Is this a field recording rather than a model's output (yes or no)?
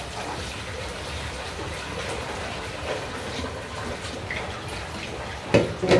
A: yes